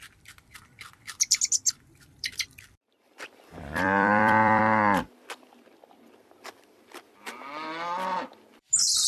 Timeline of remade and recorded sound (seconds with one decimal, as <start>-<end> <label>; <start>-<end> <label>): 0.0-4.6 remade; 4.6-6.4 recorded; 6.4-9.1 remade